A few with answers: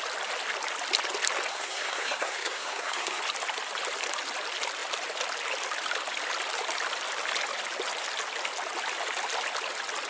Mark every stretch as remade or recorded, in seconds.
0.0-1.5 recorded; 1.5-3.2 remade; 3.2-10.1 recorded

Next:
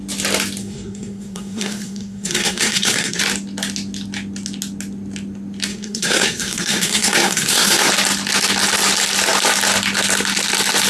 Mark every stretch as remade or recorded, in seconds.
0.0-0.6 recorded; 0.6-3.2 remade; 3.2-5.7 recorded; 5.7-7.9 remade; 7.9-10.9 recorded

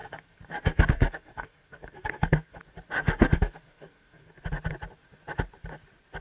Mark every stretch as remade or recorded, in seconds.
0.0-2.6 remade; 2.6-3.0 recorded; 3.0-4.3 remade; 4.3-6.2 recorded